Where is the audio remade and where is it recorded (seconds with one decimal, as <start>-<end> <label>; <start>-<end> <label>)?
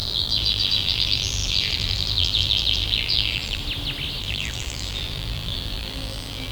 0.0-3.6 remade; 3.6-4.2 recorded; 4.2-6.5 remade